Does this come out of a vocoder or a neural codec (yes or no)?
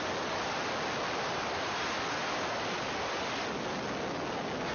no